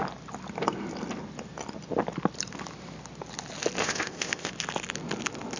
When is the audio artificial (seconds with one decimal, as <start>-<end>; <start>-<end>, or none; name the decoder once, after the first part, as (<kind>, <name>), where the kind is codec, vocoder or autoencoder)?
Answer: 3.8-4.5 (codec, ZipCodec)